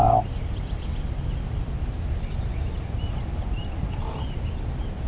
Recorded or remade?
recorded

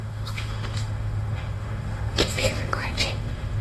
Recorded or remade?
remade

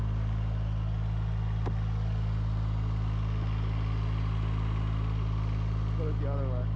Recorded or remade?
recorded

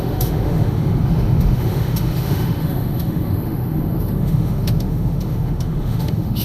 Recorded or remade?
remade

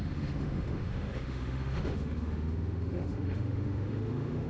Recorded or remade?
remade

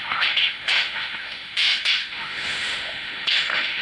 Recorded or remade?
remade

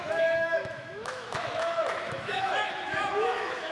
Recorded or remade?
remade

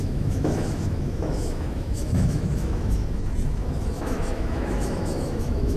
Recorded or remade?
remade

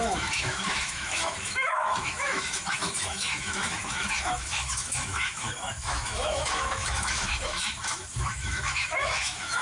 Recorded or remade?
remade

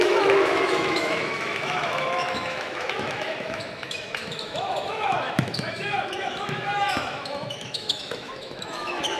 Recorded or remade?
remade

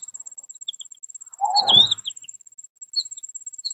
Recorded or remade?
recorded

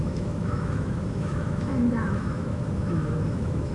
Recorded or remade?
remade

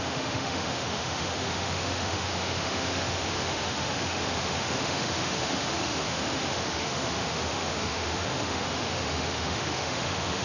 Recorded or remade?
remade